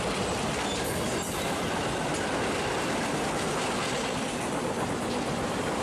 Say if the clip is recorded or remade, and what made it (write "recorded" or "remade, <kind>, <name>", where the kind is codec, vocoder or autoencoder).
recorded